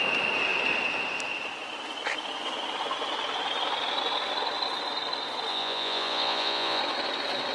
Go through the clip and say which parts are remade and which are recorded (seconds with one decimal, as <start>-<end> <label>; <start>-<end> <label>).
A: 0.0-5.5 recorded; 5.5-6.8 remade; 6.8-7.5 recorded